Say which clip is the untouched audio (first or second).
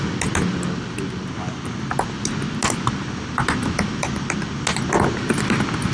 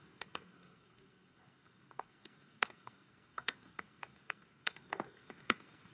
first